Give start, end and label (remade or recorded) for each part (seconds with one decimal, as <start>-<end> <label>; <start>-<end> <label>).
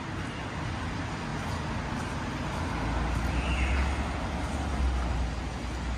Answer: 0.0-6.0 recorded